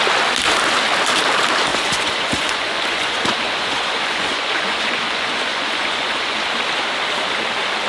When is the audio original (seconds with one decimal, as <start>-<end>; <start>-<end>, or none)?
0.0-1.7; 6.4-7.9